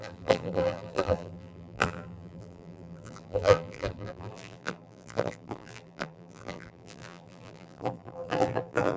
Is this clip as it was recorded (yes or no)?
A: no